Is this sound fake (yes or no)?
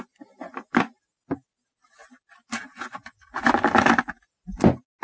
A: no